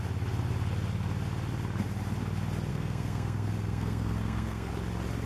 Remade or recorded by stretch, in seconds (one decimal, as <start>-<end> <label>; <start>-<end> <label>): 0.0-2.7 recorded; 2.7-4.7 remade; 4.7-5.3 recorded